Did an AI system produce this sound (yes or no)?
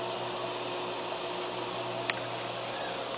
no